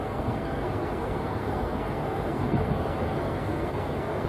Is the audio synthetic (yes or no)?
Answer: yes